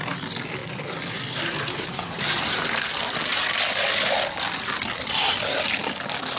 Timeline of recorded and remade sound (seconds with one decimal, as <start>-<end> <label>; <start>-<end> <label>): 0.0-1.5 recorded; 1.5-2.2 remade; 2.2-6.4 recorded